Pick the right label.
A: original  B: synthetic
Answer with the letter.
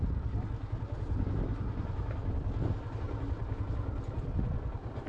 A